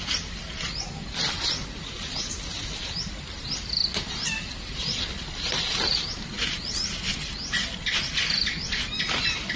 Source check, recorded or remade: recorded